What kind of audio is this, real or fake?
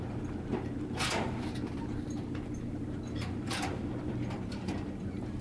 fake